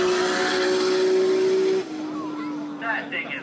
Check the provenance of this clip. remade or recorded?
recorded